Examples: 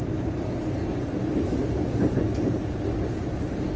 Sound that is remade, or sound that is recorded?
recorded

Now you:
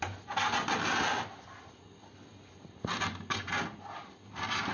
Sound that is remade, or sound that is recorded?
recorded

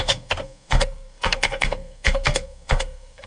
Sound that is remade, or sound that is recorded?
remade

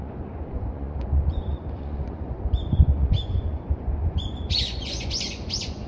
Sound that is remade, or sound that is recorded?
remade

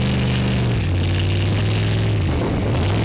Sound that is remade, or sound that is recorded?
recorded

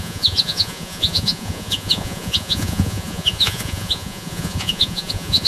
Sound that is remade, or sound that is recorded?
remade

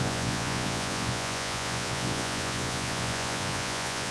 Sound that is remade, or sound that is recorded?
remade